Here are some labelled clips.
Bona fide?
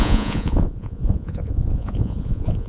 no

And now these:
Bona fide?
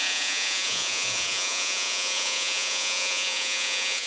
no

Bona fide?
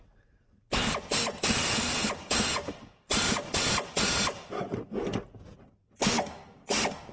yes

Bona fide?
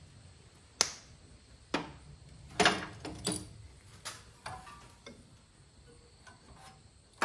yes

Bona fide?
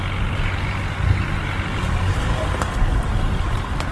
yes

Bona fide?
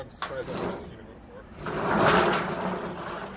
yes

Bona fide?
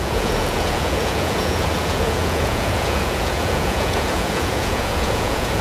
no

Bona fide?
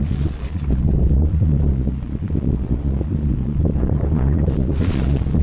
no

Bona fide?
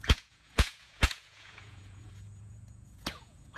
no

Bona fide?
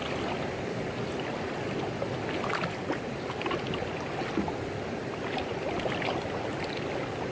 yes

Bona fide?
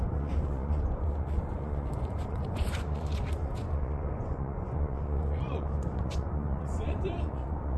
no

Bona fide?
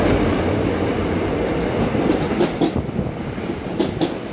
yes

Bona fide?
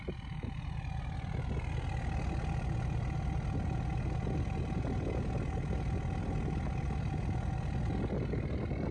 yes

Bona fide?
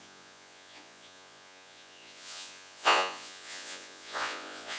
no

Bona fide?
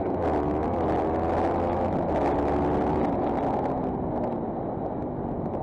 yes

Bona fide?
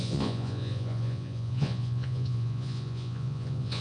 no